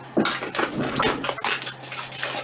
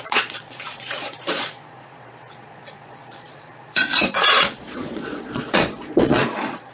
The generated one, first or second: second